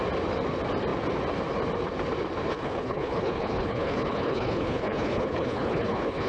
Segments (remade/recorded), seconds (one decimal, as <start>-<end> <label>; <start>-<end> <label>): 0.0-2.5 recorded; 2.5-6.3 remade